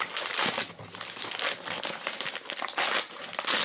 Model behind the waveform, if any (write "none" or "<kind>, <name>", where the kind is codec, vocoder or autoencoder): none